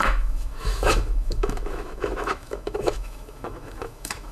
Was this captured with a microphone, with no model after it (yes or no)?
no